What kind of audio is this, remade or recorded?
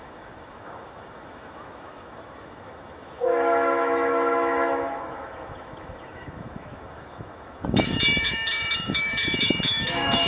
remade